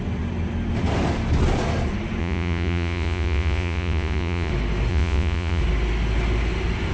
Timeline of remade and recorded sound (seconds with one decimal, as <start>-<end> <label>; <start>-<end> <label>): 0.0-2.2 recorded; 2.2-4.5 remade; 4.5-4.9 recorded; 4.9-5.6 remade; 5.6-6.9 recorded